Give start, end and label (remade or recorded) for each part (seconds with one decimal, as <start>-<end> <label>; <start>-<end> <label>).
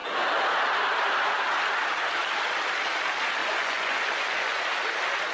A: 0.0-3.4 recorded; 3.4-4.6 remade; 4.6-5.3 recorded